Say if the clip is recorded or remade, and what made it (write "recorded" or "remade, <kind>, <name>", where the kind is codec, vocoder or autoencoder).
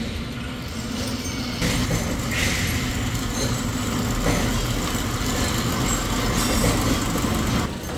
recorded